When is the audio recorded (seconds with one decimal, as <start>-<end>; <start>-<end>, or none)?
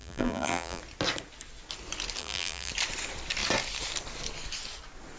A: 0.8-2.2; 2.7-5.2